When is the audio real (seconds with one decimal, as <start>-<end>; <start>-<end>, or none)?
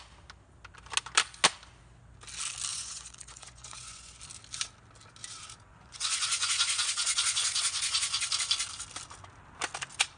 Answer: 0.0-2.7; 4.2-5.7; 8.3-10.2